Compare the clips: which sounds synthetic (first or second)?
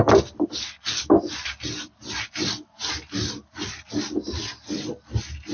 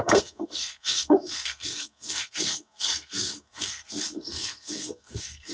second